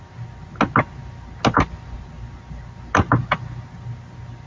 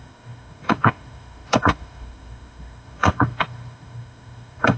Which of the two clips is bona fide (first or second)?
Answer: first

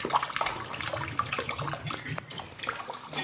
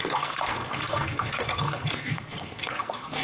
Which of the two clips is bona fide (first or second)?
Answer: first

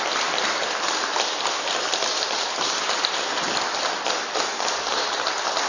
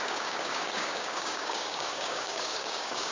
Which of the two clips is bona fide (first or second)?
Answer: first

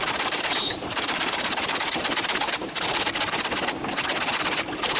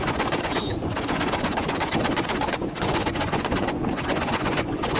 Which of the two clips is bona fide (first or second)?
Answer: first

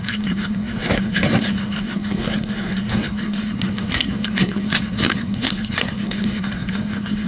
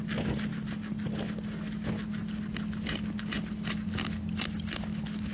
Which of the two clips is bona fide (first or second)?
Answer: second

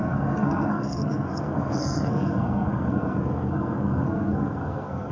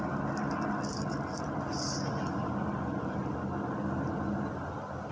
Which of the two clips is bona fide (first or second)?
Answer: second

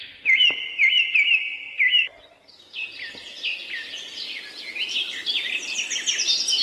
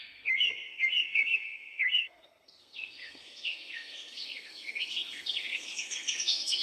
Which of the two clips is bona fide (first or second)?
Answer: first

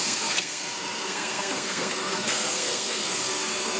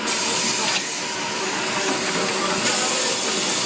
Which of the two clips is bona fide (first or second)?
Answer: second